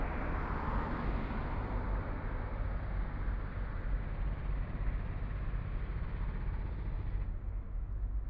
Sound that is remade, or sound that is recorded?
recorded